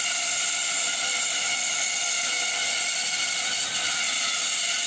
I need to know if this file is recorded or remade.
recorded